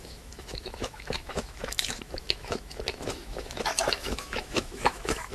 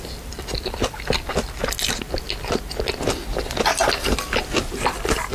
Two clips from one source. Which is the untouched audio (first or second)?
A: second